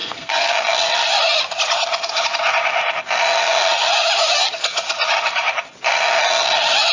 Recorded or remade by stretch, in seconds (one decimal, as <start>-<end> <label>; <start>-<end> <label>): 0.0-0.5 remade; 0.5-6.9 recorded